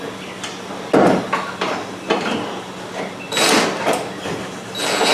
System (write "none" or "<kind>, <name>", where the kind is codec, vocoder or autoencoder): none